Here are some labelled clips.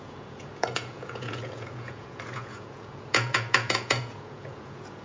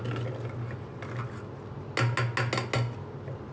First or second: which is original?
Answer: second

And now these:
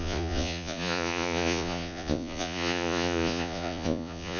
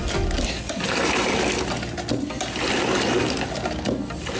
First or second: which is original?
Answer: second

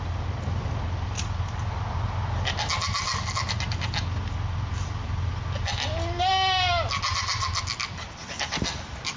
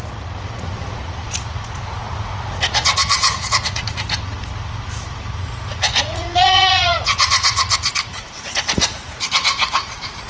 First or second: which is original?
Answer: first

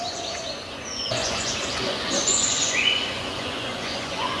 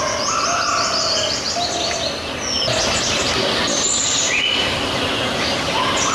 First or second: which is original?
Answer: second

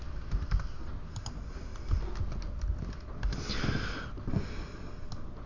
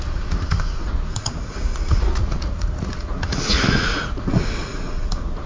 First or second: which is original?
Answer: first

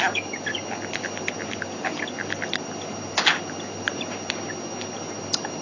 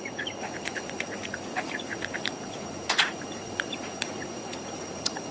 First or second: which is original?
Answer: first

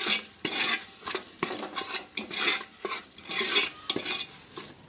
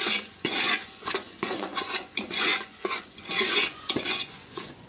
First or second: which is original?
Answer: first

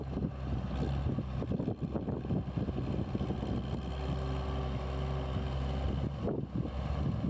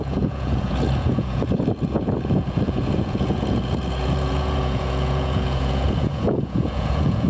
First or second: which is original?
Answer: first